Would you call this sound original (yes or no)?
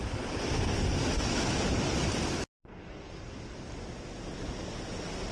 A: yes